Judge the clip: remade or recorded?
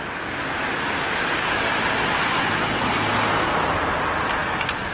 recorded